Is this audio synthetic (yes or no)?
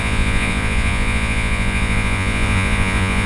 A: yes